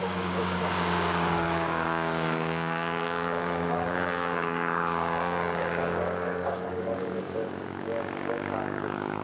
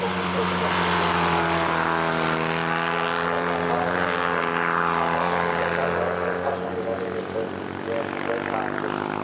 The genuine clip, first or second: second